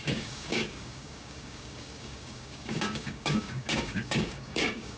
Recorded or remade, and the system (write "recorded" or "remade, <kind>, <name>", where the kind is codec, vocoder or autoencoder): remade, codec, DAC